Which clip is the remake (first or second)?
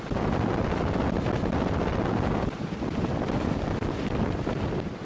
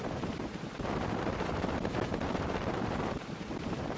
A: second